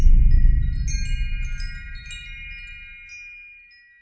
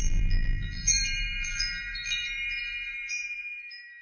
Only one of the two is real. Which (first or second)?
first